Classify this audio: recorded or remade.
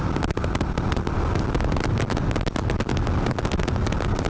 recorded